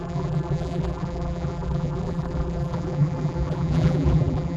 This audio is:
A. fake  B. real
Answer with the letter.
A